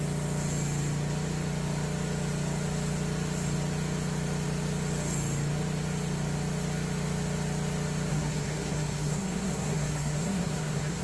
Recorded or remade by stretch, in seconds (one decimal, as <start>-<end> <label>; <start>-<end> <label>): 0.0-8.1 recorded; 8.1-11.0 remade